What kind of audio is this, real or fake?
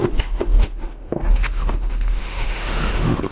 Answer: fake